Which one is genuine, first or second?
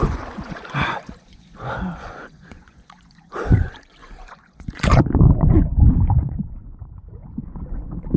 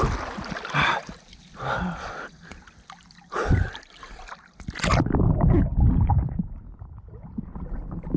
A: second